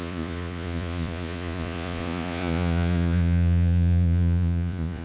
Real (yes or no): no